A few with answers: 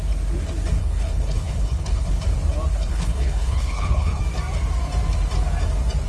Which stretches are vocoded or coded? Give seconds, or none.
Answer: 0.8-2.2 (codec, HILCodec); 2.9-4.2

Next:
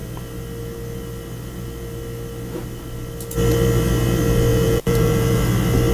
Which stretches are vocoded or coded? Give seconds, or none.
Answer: 4.5-5.4 (vocoder, Vocos)

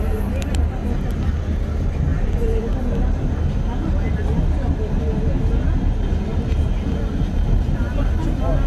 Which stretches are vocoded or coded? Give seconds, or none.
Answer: 2.1-2.7 (vocoder, BigVGAN v2)